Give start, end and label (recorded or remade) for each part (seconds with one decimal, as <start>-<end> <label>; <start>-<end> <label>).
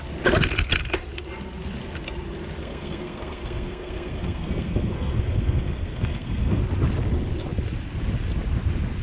0.0-2.6 recorded; 2.6-6.6 remade; 6.6-9.0 recorded